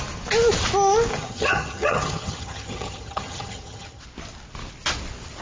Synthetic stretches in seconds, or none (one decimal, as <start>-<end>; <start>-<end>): 1.1-4.0